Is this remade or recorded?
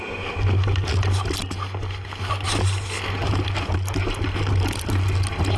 recorded